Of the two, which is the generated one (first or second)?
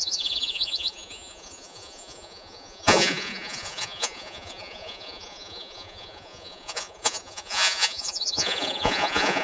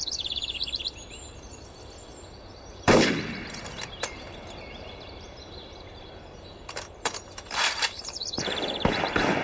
first